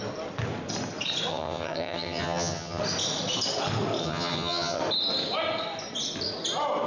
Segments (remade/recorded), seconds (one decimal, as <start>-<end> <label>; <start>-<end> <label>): 0.0-1.3 recorded; 1.3-2.8 remade; 2.8-4.0 recorded; 4.0-4.8 remade; 4.8-6.9 recorded